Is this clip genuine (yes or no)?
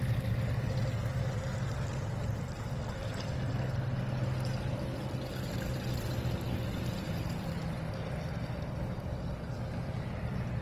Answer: yes